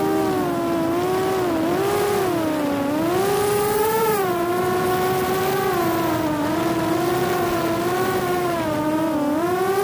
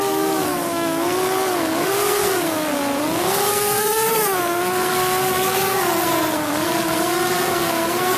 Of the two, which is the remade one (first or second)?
second